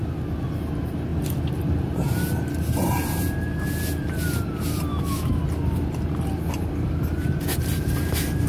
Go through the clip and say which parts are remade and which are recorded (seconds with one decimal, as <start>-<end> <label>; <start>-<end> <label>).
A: 0.0-4.9 recorded; 4.9-5.4 remade; 5.4-8.5 recorded